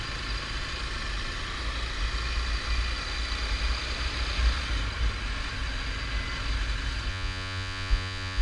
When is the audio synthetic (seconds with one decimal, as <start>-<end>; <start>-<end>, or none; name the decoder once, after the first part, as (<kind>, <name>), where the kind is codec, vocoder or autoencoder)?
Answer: 7.1-8.4 (vocoder, Vocos)